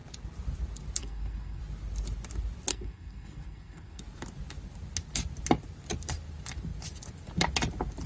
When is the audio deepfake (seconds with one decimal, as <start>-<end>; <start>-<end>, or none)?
1.0-1.6; 2.7-4.0